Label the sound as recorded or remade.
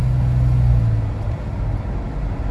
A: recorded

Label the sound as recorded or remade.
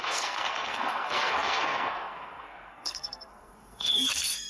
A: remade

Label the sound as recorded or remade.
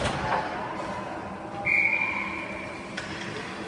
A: recorded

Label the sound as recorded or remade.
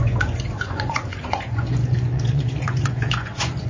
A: remade